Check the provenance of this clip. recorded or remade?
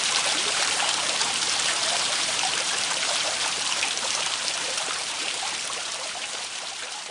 remade